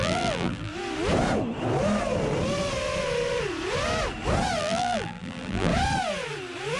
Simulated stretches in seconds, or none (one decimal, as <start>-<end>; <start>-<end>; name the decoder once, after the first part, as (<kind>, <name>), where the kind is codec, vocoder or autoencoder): 0.0-0.7 (vocoder, BigVGAN v2); 4.6-5.7